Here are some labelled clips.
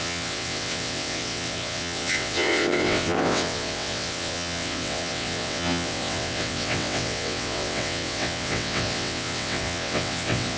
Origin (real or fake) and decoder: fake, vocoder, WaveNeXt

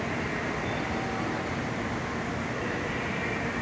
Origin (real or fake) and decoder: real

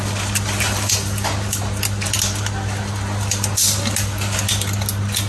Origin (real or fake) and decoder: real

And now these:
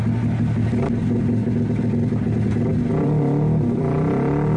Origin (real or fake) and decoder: real